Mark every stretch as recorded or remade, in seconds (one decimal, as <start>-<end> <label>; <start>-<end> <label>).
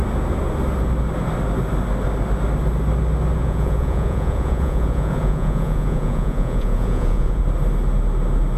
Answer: 0.0-3.4 recorded; 3.4-7.4 remade; 7.4-8.6 recorded